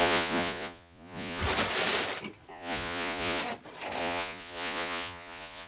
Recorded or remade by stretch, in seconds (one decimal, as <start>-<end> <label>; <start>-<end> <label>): 0.0-1.4 remade; 1.4-2.5 recorded; 2.5-3.4 remade; 3.4-4.0 recorded; 4.0-5.7 remade